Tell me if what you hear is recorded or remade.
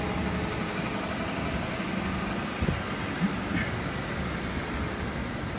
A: recorded